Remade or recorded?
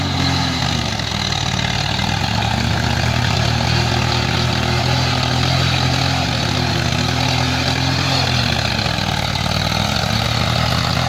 recorded